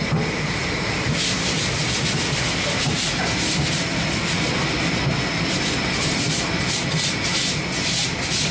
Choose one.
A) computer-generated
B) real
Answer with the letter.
B